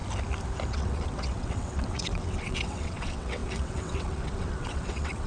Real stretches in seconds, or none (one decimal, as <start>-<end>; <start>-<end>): 0.0-0.7